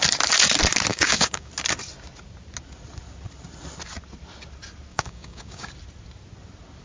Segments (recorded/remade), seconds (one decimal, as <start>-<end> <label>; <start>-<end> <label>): 0.0-0.9 recorded; 0.9-1.5 remade; 1.5-4.9 recorded; 4.9-5.7 remade; 5.7-6.8 recorded